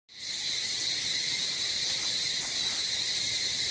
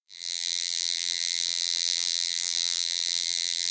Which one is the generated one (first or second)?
second